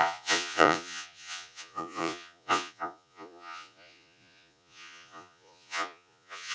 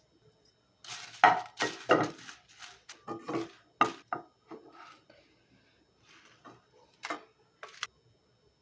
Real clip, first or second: second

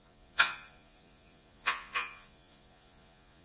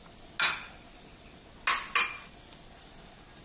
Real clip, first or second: second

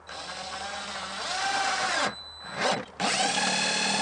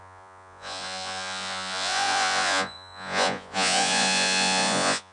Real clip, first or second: first